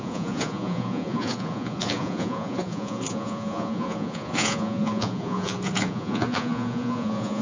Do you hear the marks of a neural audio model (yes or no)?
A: yes